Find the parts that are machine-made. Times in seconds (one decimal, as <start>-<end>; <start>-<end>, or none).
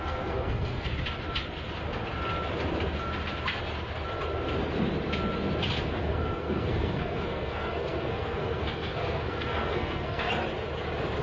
0.0-0.9; 6.0-10.3